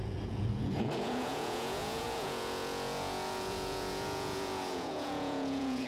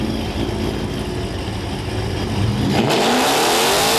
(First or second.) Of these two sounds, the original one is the second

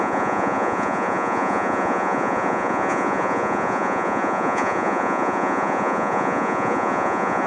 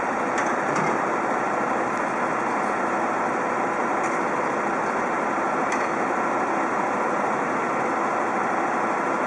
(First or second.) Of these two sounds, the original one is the second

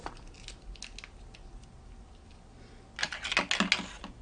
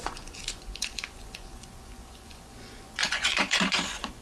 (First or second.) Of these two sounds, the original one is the first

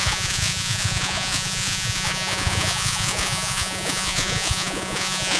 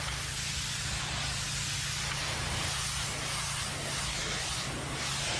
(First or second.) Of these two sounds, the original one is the second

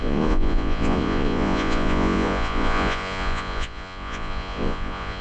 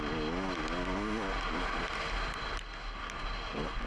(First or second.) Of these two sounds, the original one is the second